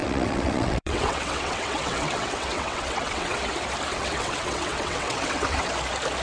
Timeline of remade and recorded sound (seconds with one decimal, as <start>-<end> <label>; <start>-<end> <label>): 0.0-3.5 remade; 3.5-3.9 recorded; 3.9-5.7 remade; 5.7-6.2 recorded